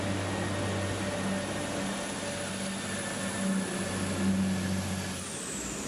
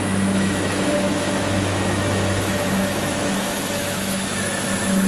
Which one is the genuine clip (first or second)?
first